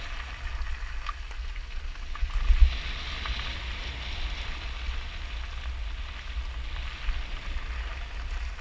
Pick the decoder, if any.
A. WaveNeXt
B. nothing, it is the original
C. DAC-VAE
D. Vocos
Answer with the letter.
B